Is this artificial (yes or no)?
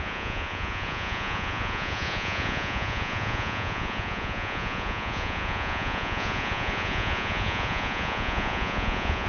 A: yes